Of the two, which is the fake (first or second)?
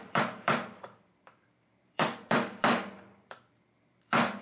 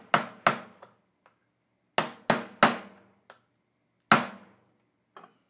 first